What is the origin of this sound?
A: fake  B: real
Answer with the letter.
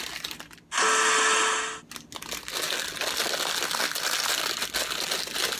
B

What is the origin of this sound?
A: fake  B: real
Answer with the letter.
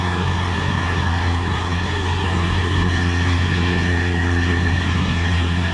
A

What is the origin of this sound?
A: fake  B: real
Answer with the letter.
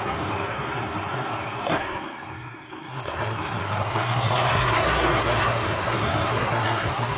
A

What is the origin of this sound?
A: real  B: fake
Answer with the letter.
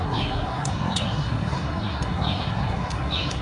B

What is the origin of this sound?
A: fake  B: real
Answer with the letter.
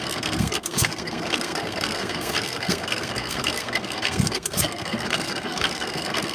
A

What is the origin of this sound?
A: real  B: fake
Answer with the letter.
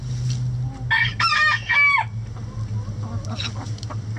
A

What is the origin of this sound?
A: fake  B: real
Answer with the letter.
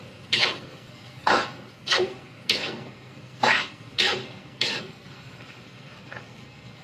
A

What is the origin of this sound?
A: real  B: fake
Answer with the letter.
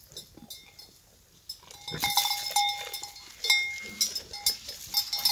A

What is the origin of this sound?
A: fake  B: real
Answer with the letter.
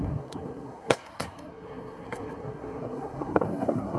A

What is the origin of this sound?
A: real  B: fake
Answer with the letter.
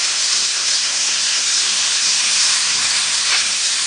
B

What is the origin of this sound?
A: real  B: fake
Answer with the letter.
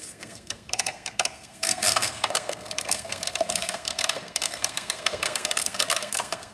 B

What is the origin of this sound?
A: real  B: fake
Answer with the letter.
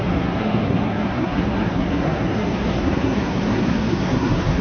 B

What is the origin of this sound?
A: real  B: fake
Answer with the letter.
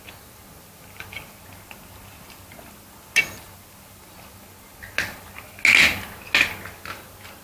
A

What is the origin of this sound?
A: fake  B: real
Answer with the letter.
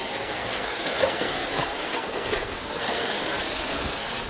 A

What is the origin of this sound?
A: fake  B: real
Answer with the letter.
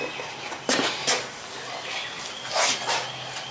B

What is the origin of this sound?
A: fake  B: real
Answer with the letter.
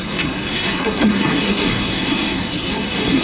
A